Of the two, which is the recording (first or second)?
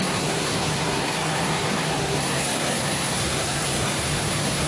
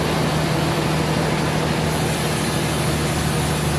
second